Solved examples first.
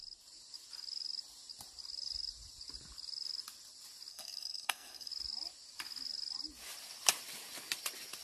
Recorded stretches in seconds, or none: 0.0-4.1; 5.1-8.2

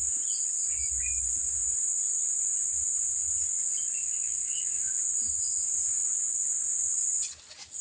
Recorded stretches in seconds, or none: 0.0-4.0; 5.0-7.8

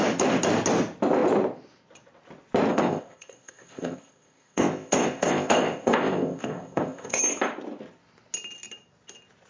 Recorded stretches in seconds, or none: 0.0-2.7; 7.2-9.5

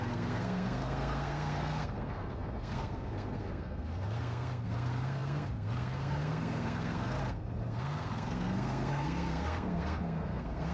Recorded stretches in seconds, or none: none

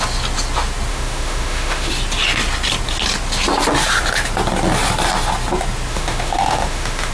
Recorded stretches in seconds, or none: 0.0-0.9; 1.9-5.9